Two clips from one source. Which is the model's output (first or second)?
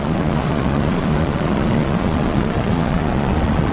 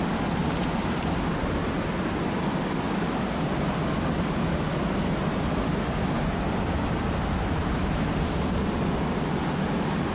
first